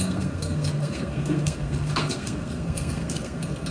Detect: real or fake fake